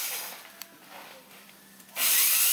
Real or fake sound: fake